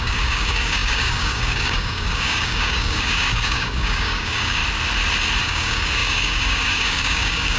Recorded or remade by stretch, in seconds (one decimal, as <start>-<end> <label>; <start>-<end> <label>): 0.0-4.6 remade; 4.6-5.4 recorded; 5.4-7.6 remade